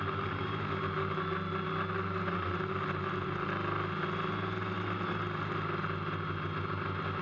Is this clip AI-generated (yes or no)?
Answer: no